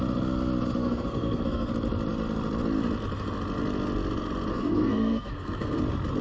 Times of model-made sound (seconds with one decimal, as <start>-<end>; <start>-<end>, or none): 0.8-1.7; 4.5-5.8